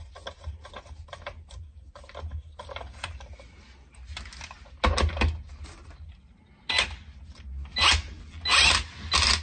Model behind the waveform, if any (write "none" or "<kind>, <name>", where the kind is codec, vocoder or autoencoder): none